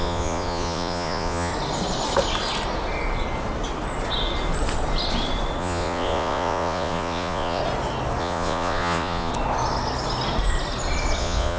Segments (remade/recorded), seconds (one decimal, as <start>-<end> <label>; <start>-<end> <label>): 0.0-1.5 remade; 1.5-5.6 recorded; 5.6-7.6 remade; 7.6-8.2 recorded; 8.2-9.3 remade; 9.3-11.2 recorded; 11.2-11.6 remade